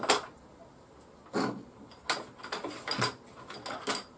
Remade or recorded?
recorded